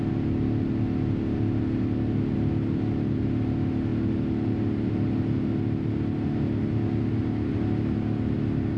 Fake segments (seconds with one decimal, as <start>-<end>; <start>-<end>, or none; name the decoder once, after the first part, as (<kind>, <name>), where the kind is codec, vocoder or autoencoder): none